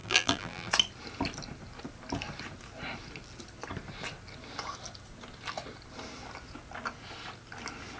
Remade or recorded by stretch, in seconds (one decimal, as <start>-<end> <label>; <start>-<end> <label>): 0.0-0.7 remade; 0.7-8.0 recorded